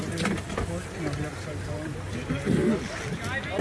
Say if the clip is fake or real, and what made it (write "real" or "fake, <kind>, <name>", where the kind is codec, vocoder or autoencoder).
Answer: real